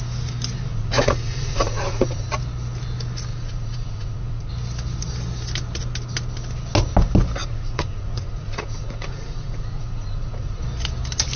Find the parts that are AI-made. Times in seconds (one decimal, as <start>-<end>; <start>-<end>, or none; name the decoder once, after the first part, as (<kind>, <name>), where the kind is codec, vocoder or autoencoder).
0.7-2.3 (vocoder, Vocos); 3.3-4.5; 7.4-10.6